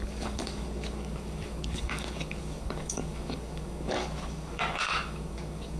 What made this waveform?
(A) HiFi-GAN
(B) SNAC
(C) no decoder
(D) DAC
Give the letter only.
D